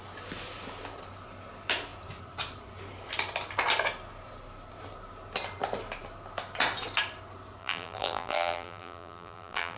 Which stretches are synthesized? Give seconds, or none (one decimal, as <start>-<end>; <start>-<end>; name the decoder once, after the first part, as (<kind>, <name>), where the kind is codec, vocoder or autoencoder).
7.6-9.8 (vocoder, BigVGAN v2)